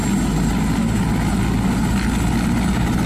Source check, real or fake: real